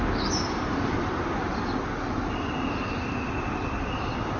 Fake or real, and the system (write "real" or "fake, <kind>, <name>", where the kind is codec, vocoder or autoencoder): real